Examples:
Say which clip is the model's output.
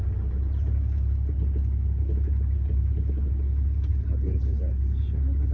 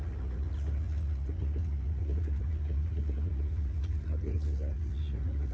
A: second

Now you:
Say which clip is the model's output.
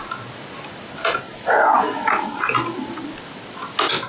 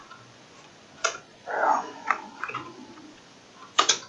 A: second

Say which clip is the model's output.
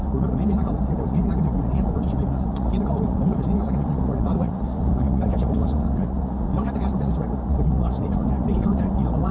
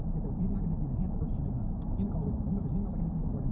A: first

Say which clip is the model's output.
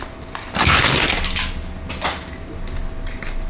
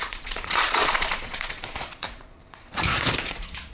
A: second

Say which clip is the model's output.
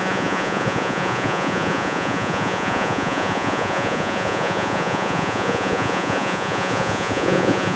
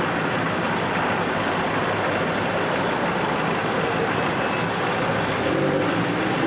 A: first